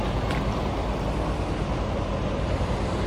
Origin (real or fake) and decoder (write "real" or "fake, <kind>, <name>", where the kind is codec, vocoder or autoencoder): real